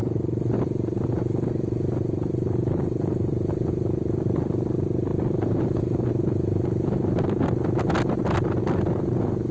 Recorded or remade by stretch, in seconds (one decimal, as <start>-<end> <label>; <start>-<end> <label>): 0.0-5.1 recorded; 5.1-6.2 remade; 6.2-9.5 recorded